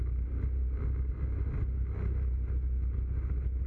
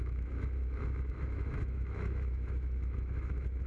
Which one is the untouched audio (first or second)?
first